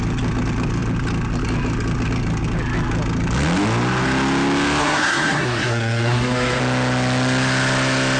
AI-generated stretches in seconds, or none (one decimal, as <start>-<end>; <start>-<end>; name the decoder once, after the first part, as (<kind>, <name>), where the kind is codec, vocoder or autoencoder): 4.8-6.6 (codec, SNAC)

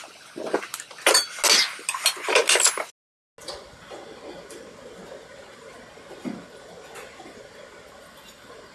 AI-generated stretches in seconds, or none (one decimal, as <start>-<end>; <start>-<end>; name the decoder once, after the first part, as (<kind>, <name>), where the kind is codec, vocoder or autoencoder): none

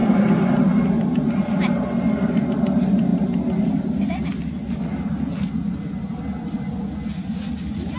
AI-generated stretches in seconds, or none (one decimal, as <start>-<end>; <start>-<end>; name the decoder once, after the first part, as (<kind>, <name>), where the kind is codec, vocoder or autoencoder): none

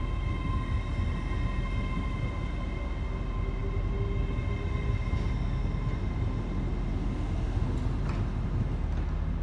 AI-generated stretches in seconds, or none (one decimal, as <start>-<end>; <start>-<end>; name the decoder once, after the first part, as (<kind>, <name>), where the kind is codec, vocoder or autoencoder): none

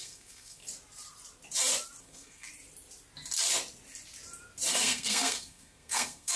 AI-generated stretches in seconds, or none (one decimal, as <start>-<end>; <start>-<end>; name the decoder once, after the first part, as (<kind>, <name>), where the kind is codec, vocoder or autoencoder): 0.0-0.6 (codec, SNAC); 2.0-2.5; 4.7-6.4